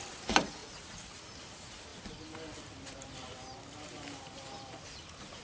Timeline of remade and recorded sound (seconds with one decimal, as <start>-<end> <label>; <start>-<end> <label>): 0.0-0.6 recorded; 0.6-1.2 remade; 1.2-5.4 recorded